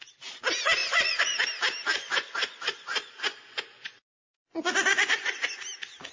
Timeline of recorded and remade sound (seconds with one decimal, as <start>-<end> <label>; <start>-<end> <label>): 0.0-0.8 recorded; 0.8-1.4 remade; 1.4-1.9 recorded; 1.9-5.6 remade; 5.6-6.1 recorded